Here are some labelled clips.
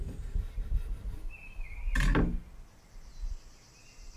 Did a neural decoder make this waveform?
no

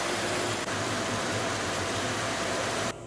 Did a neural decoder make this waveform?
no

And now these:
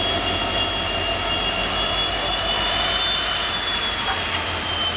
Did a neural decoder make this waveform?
no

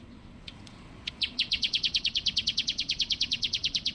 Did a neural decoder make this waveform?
yes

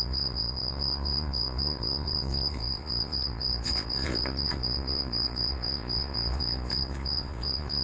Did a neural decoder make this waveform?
yes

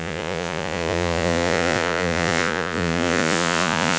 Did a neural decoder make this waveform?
yes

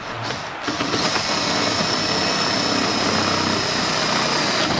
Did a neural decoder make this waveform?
no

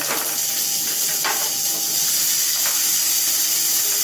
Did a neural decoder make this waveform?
no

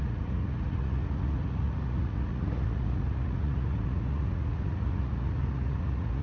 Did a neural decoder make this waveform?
yes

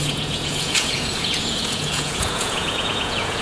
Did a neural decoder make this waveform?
yes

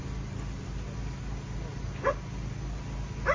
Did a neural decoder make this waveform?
no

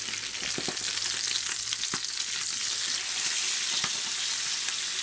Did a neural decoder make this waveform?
no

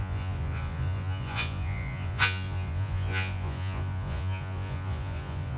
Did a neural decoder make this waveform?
yes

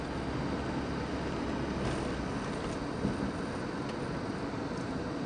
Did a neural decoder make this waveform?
no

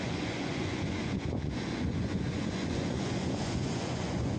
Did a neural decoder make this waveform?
yes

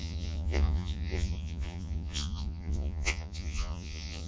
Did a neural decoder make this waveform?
yes